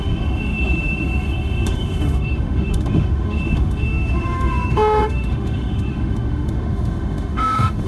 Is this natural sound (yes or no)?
no